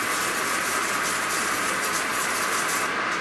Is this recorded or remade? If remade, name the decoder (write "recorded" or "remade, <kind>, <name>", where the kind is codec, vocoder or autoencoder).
recorded